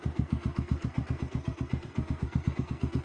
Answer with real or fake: fake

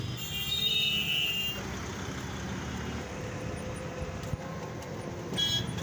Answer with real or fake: real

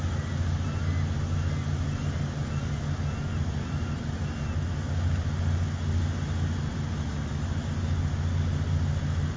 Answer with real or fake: real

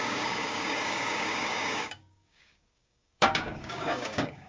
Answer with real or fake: fake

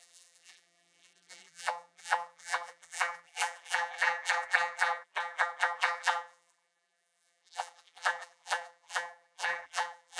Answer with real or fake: fake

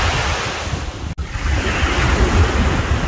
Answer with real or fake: real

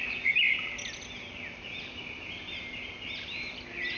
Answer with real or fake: real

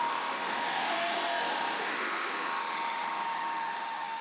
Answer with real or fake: fake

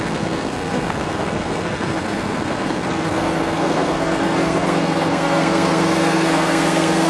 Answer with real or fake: fake